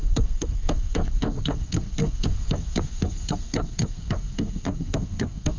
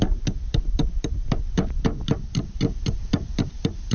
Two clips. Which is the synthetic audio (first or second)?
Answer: first